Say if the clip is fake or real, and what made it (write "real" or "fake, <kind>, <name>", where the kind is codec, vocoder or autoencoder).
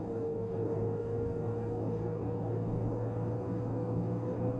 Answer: fake, codec, DAC